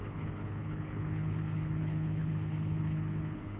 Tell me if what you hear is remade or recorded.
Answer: remade